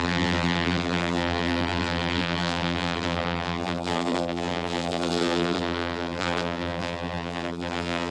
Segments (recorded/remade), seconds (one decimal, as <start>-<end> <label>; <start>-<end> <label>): 0.0-8.1 remade